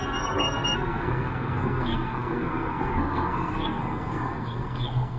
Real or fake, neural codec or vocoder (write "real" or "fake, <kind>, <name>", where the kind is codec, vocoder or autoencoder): fake, codec, SNAC